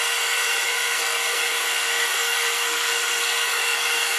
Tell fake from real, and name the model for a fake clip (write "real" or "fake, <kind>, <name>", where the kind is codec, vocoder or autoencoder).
fake, codec, SNAC